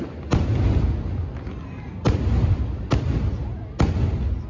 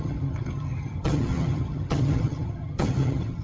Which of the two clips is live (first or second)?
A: first